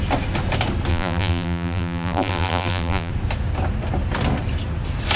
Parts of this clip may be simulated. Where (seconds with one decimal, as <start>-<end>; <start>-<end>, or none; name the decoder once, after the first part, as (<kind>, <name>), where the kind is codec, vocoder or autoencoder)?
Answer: 0.9-3.1 (vocoder, BigVGAN v2)